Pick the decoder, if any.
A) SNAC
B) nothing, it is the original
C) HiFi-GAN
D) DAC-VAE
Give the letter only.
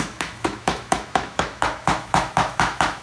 D